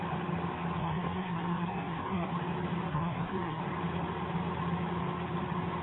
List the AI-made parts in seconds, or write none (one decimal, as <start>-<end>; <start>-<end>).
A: 0.8-2.3; 2.9-3.6

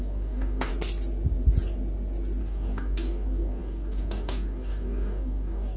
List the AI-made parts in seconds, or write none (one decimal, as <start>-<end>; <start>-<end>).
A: 0.0-0.7; 2.4-5.8